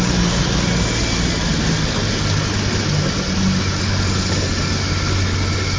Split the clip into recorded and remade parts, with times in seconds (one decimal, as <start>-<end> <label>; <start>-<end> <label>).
0.0-5.8 recorded

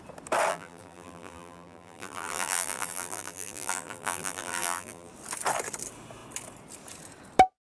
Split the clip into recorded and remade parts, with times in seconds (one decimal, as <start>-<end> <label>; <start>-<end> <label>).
0.0-0.5 recorded; 0.5-5.1 remade; 5.1-7.7 recorded

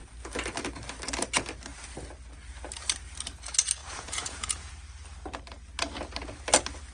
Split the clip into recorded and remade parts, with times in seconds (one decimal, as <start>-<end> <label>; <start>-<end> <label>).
0.0-3.8 recorded; 3.8-4.7 remade; 4.7-6.9 recorded

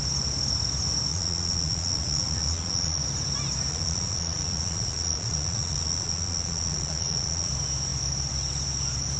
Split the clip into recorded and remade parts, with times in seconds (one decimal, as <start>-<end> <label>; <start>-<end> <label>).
0.0-1.1 recorded; 1.1-3.0 remade; 3.0-3.7 recorded; 3.7-7.5 remade; 7.5-9.2 recorded

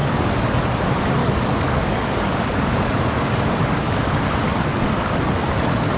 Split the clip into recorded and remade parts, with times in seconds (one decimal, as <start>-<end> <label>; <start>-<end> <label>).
0.0-0.6 remade; 0.6-1.2 recorded; 1.2-4.2 remade; 4.2-6.0 recorded

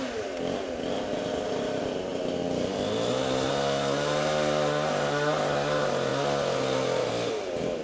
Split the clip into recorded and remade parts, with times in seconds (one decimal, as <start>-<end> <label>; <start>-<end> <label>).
0.0-7.8 recorded

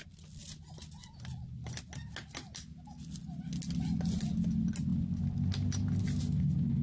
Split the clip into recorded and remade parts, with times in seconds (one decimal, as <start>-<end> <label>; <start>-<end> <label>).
0.0-6.8 recorded